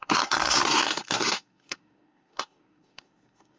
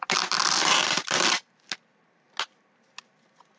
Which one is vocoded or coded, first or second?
first